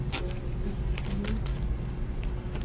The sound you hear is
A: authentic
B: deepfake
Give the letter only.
A